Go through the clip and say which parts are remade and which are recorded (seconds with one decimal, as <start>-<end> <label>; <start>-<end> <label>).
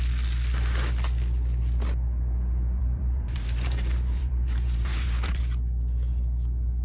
0.0-2.8 recorded; 2.8-5.4 remade; 5.4-6.8 recorded